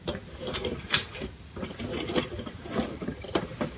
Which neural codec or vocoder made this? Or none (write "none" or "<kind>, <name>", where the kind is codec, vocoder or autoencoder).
vocoder, BigVGAN v2